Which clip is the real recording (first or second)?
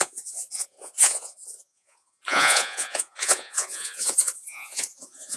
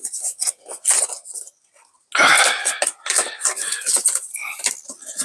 second